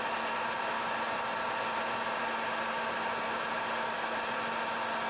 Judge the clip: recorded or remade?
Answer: recorded